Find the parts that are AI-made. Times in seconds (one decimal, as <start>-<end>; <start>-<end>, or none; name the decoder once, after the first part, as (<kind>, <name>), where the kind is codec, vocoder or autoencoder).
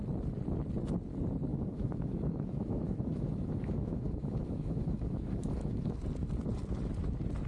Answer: 1.5-6.0 (autoencoder, DAC-VAE)